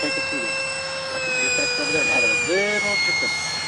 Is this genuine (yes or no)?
no